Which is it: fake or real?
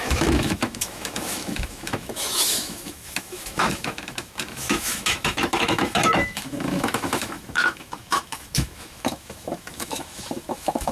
fake